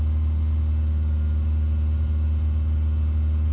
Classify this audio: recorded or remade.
recorded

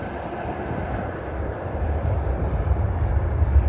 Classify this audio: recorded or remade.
remade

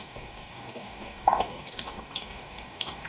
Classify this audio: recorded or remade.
remade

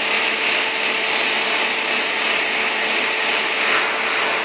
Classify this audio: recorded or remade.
recorded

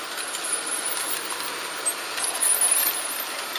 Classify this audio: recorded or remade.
remade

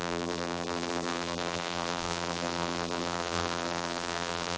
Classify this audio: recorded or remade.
remade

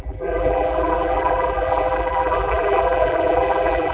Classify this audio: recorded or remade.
remade